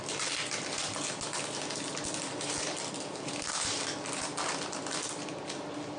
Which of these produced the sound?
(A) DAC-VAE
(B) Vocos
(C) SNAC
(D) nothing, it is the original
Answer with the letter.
D